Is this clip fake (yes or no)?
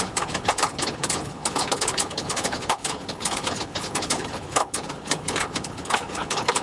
yes